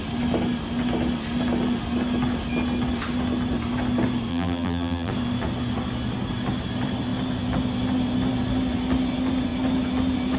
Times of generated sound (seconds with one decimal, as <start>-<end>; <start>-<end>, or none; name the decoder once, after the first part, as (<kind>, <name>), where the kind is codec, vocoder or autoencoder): 4.3-5.1 (vocoder, BigVGAN v2)